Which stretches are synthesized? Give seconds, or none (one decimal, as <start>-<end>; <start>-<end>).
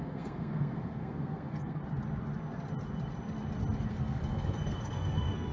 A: 0.0-1.8; 3.9-5.5